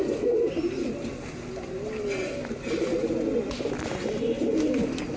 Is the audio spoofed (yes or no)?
no